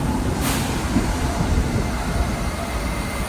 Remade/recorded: remade